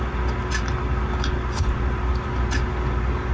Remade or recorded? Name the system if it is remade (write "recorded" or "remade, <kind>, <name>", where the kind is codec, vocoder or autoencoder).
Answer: recorded